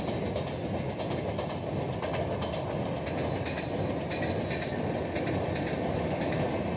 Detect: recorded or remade recorded